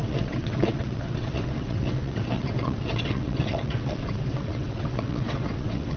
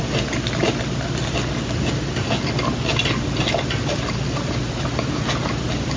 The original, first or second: second